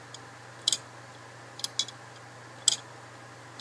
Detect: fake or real real